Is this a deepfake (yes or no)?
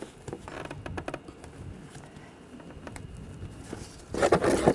no